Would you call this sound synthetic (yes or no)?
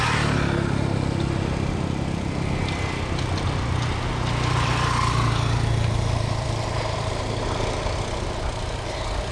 no